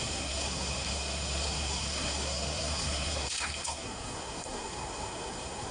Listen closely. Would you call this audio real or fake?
fake